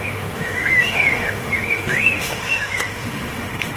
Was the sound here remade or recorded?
remade